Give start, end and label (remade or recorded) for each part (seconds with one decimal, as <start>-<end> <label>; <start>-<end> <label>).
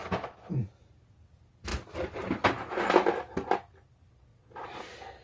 0.0-4.3 recorded; 4.3-4.8 remade; 4.8-5.2 recorded